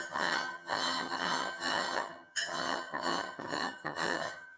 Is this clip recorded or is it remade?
remade